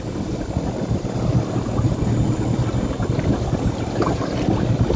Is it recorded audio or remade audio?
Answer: recorded